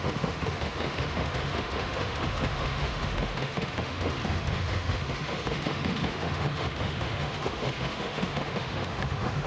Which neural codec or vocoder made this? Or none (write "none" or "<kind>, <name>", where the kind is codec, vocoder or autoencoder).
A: autoencoder, DAC-VAE